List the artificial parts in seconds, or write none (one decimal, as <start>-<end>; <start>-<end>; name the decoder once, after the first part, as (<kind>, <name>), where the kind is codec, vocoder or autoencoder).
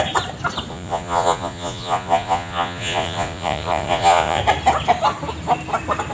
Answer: 0.7-4.4 (vocoder, Vocos)